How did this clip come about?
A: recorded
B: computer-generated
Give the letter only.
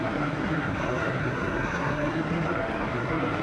B